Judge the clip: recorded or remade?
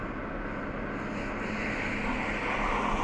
recorded